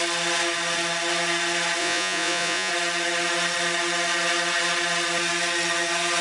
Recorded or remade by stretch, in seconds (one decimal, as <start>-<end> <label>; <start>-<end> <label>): 0.0-1.8 recorded; 1.8-2.7 remade; 2.7-6.2 recorded